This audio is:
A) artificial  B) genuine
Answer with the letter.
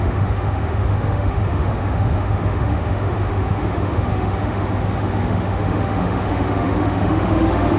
A